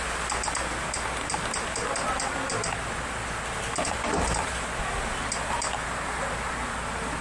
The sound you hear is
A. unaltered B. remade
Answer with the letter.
A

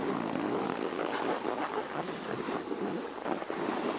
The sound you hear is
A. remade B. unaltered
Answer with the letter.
B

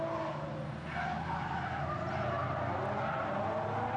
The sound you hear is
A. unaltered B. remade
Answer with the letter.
A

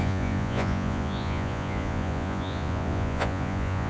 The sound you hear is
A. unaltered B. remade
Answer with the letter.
B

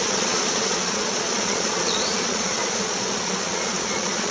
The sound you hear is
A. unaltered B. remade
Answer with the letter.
B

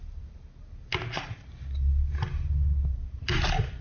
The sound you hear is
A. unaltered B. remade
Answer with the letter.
A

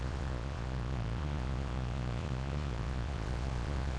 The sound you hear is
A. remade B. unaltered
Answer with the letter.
A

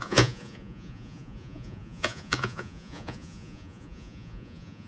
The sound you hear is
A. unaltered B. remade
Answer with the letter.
B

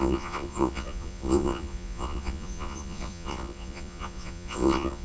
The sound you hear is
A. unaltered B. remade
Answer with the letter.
B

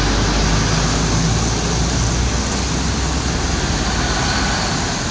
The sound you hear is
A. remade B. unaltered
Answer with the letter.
B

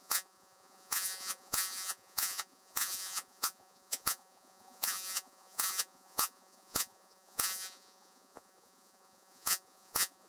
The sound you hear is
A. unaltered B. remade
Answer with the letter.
B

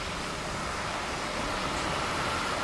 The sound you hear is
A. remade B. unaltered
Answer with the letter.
B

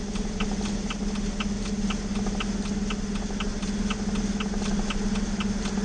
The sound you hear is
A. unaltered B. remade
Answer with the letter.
A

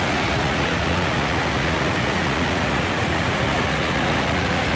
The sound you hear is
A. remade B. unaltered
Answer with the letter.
A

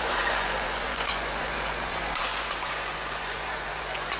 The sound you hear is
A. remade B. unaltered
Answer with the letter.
A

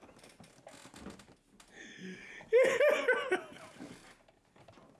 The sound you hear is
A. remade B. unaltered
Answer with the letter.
B